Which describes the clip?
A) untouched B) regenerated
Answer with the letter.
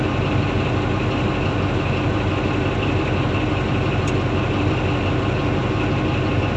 A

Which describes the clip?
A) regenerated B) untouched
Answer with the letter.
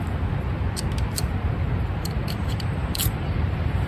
A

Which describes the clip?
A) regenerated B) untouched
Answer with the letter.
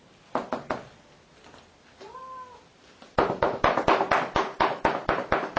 B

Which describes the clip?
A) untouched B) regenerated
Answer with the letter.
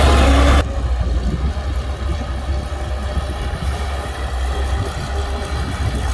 A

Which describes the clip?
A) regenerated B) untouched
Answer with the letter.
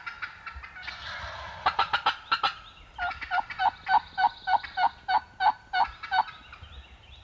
B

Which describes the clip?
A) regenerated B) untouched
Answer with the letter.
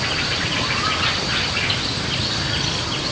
B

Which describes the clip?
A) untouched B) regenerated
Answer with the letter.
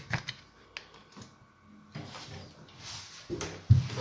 A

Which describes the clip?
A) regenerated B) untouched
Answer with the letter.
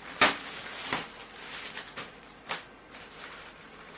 B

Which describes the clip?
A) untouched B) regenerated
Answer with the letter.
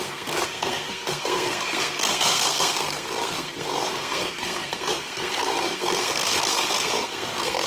B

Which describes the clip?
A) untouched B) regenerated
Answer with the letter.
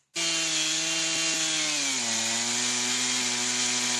A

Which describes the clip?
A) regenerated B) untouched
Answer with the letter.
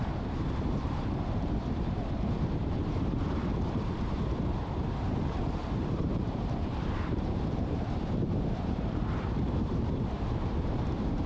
A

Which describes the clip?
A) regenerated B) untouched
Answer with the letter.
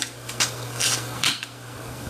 A